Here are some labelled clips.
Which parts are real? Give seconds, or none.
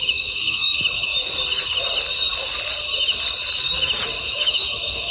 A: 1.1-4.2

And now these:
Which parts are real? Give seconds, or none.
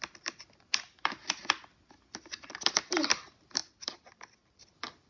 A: 0.0-5.1